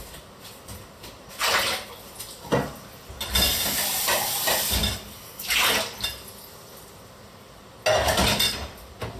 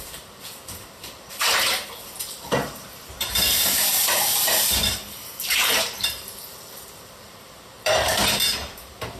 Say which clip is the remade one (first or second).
second